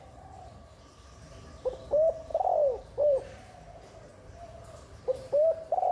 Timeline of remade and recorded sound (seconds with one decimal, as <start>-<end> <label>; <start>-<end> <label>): 0.0-0.5 remade; 0.5-1.9 recorded; 1.9-2.3 remade; 2.3-2.8 recorded; 2.8-5.9 remade